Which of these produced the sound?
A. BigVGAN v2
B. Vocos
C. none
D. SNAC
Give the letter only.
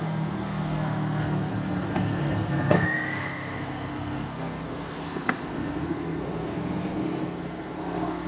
D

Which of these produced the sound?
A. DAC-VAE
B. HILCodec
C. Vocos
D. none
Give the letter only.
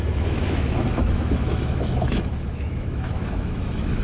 A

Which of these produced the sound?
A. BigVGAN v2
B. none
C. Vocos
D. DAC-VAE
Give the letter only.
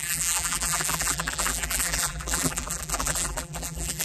A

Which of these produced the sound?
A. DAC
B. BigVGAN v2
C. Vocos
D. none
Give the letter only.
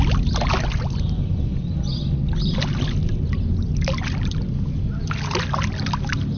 D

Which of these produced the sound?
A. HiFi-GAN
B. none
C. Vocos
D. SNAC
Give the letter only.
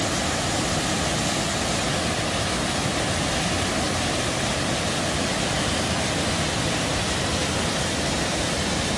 B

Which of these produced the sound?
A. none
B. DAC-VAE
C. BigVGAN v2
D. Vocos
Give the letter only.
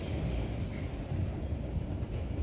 A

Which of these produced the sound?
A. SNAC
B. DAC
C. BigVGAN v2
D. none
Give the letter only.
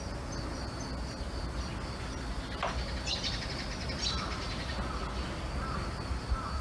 D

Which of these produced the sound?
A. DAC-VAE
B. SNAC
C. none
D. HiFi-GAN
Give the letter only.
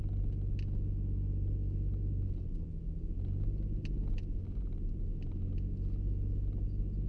C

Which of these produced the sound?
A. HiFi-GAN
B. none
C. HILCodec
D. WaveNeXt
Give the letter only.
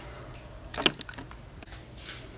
B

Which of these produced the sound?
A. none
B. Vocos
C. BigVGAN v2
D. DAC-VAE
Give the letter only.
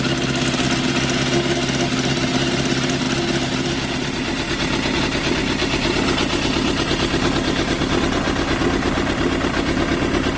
A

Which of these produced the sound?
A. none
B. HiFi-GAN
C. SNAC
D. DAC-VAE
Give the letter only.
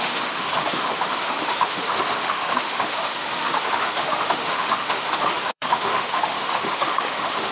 D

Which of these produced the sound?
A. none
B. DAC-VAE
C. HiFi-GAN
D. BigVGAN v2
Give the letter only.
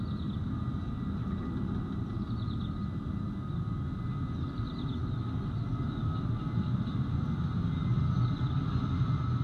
A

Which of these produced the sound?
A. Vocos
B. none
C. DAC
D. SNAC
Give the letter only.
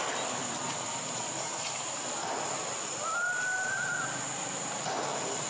B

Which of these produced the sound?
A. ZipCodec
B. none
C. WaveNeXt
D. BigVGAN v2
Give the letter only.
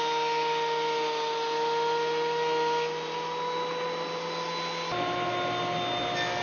B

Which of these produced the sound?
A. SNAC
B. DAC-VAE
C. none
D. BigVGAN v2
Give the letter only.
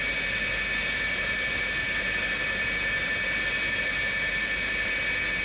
C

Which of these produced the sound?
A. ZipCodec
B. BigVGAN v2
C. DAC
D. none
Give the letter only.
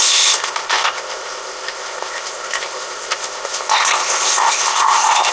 A